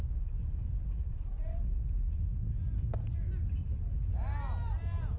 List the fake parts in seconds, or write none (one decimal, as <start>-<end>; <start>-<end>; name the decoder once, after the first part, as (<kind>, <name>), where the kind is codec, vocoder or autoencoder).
none